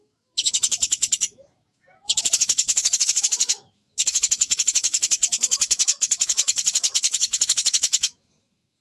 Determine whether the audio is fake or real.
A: fake